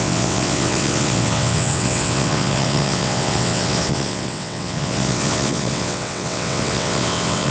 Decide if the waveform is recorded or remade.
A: remade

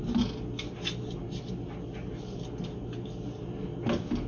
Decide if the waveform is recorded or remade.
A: recorded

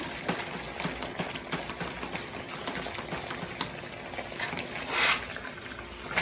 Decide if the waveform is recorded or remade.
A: recorded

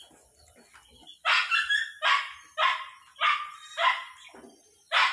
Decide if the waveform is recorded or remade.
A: recorded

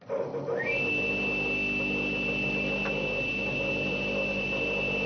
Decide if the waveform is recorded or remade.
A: recorded